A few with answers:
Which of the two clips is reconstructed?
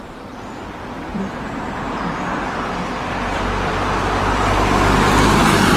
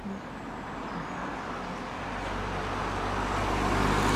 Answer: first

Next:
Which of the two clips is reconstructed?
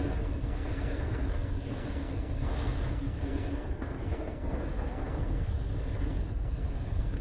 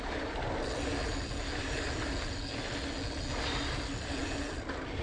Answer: first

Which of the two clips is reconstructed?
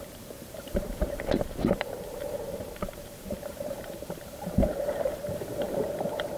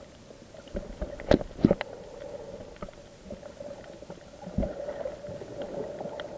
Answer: first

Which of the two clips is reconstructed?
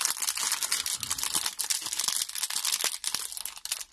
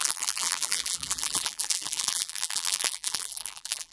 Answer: second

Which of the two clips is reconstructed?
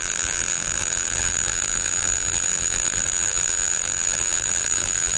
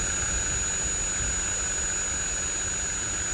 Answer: first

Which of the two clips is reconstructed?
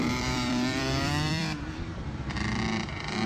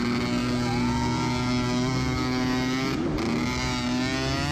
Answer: first